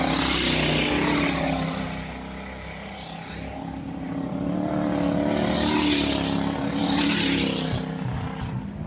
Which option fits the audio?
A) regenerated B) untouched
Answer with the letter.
B